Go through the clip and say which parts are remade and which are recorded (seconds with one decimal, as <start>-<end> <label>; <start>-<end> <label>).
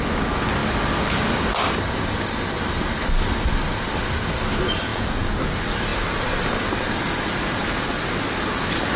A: 0.0-4.9 recorded; 4.9-5.4 remade; 5.4-9.0 recorded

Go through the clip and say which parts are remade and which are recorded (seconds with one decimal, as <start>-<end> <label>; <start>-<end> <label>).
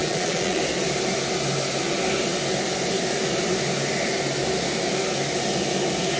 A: 0.0-0.6 remade; 0.6-6.2 recorded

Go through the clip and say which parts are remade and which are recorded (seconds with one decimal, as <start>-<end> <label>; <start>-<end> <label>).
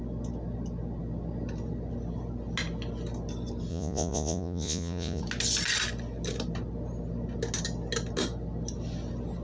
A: 0.0-3.7 recorded; 3.7-5.2 remade; 5.2-9.4 recorded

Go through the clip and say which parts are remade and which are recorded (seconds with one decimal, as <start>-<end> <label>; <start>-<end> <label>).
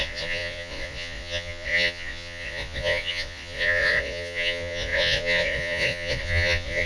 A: 0.0-6.9 remade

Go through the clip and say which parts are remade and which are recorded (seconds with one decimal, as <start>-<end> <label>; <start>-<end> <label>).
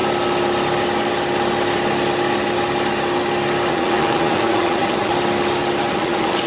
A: 0.0-3.7 recorded; 3.7-5.1 remade; 5.1-5.9 recorded; 5.9-6.5 remade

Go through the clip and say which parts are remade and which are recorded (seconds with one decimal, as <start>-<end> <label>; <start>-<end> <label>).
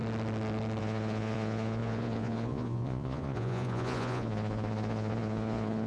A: 0.0-0.8 recorded; 0.8-5.9 remade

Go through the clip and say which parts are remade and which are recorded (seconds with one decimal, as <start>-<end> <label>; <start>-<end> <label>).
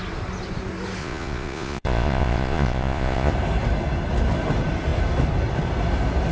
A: 0.0-1.0 recorded; 1.0-3.3 remade; 3.3-6.3 recorded